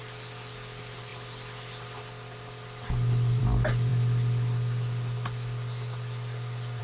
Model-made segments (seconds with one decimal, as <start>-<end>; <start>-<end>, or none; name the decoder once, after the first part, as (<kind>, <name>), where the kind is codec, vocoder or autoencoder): none